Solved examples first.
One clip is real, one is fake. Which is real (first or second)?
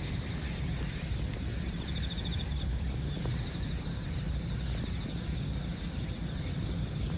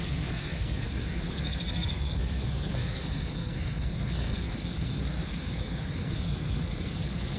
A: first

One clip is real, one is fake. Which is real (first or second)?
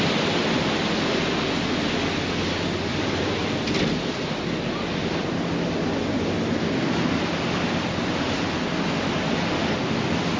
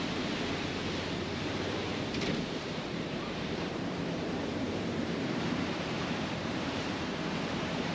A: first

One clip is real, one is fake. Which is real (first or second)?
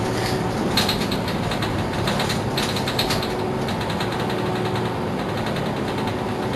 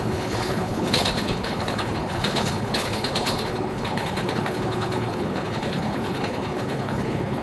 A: first